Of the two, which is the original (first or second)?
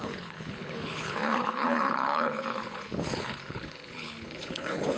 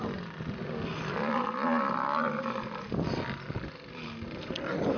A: second